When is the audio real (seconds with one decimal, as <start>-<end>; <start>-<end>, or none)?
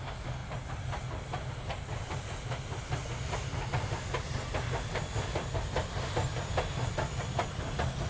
0.0-8.1